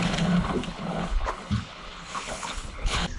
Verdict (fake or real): fake